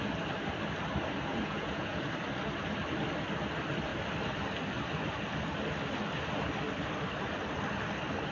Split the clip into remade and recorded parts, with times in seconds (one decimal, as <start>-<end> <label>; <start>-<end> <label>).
0.0-1.3 recorded; 1.3-2.0 remade; 2.0-8.3 recorded